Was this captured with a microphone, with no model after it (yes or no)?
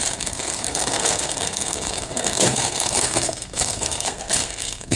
no